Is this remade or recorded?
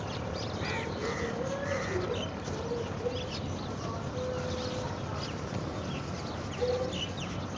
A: recorded